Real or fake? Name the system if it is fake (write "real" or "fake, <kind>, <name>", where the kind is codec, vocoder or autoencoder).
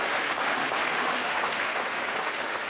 fake, autoencoder, DAC-VAE